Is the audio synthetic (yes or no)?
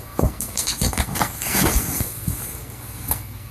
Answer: yes